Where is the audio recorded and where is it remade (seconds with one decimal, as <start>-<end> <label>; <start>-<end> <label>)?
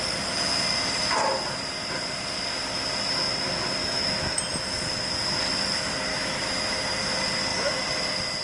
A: 0.0-3.8 recorded; 3.8-4.4 remade; 4.4-6.1 recorded; 6.1-7.0 remade; 7.0-8.4 recorded